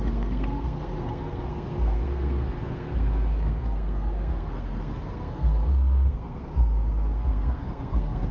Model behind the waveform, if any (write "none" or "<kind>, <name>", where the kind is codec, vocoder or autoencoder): codec, SNAC